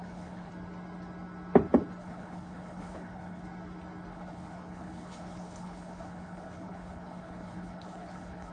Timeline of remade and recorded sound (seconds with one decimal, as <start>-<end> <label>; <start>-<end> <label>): 0.0-0.5 remade; 0.5-2.0 recorded; 2.0-3.4 remade; 3.4-4.1 recorded; 4.1-8.5 remade